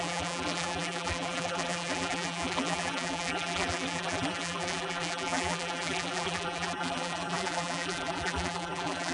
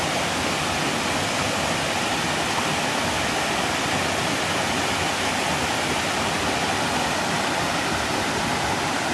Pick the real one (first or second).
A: second